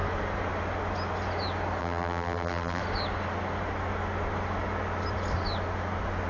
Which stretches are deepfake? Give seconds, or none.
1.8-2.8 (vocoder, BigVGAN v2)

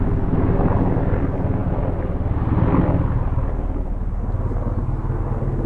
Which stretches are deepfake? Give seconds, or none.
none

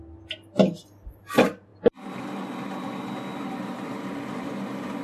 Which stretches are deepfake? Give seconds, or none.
none

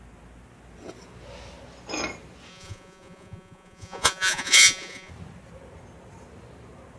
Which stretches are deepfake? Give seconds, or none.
2.5-5.1 (vocoder, Vocos)